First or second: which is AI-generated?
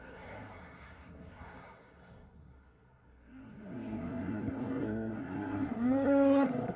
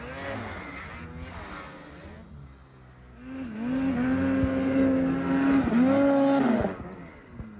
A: first